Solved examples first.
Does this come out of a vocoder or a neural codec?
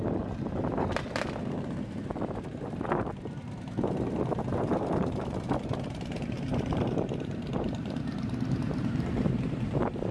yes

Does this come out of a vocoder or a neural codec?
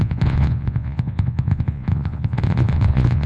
yes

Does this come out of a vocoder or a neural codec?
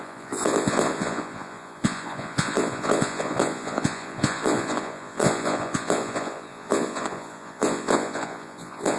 yes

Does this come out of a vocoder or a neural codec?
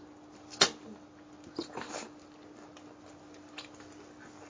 no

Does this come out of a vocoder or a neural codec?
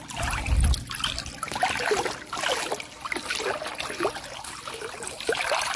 no